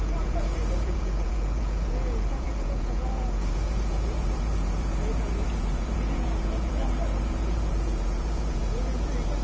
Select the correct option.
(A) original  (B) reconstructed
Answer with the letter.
B